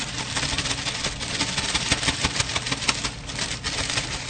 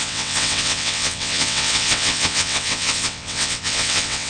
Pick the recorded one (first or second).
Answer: first